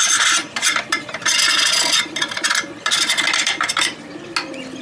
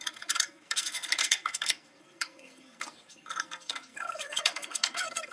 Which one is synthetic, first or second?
second